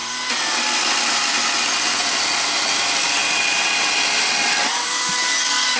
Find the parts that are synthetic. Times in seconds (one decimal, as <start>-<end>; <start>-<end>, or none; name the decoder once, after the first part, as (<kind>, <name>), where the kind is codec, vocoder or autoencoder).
4.8-5.8 (codec, DAC)